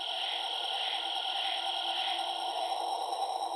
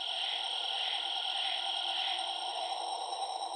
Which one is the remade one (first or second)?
second